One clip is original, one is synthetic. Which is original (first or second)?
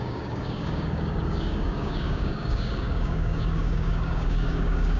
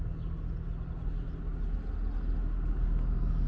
second